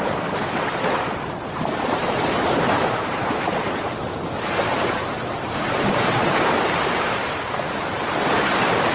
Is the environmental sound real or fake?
fake